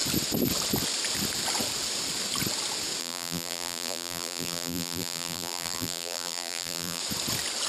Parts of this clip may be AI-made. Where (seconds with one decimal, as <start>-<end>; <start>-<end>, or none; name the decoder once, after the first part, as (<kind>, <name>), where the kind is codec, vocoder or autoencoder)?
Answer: 3.0-7.0 (vocoder, BigVGAN v2)